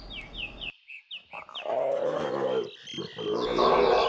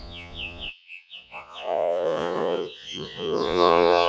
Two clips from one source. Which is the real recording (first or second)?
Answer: first